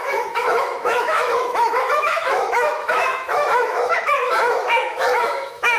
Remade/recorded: remade